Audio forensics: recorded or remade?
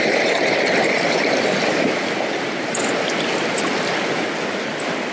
recorded